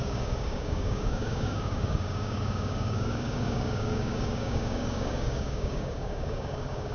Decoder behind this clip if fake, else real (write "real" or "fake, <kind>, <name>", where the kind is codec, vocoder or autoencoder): fake, codec, DAC